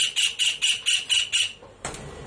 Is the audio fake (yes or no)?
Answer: no